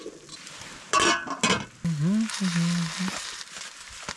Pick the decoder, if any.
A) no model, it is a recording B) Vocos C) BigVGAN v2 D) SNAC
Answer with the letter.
A